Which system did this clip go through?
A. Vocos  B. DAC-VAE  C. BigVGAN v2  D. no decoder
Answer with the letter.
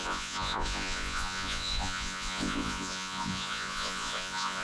A